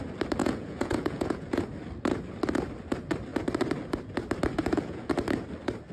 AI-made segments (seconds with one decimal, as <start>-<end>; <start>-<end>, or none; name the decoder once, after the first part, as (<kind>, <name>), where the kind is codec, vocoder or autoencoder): 0.4-1.6 (vocoder, Vocos); 4.6-5.1